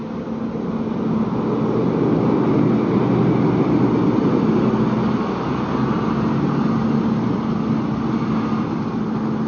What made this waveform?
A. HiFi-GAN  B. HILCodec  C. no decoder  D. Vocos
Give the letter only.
C